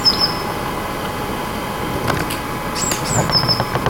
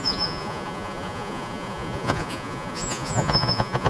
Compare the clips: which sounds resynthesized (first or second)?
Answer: second